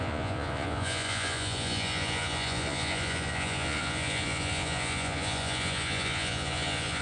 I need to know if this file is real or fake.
fake